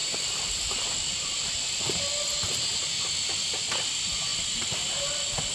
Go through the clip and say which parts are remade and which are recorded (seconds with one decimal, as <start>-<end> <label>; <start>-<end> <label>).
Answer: 0.0-2.6 remade; 2.6-4.3 recorded; 4.3-5.5 remade